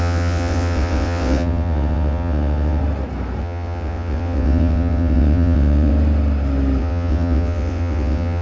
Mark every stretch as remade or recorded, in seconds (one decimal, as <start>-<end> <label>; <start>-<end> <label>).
0.0-2.8 remade; 2.8-3.4 recorded; 3.4-5.9 remade; 5.9-6.8 recorded; 6.8-8.4 remade